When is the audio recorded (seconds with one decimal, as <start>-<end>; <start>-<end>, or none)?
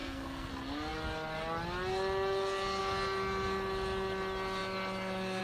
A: 0.5-5.4